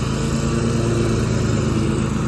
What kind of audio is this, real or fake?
real